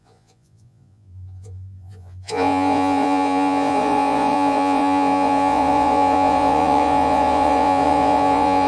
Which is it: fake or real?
fake